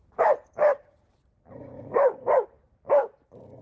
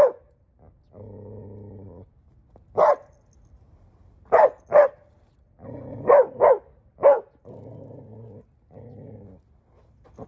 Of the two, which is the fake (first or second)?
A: first